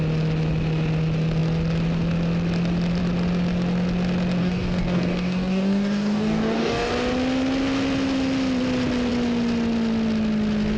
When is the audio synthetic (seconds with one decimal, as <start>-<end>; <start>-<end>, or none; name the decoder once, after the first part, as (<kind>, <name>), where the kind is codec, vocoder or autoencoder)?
4.4-6.9 (codec, DAC)